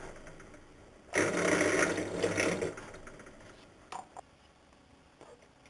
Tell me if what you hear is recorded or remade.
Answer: recorded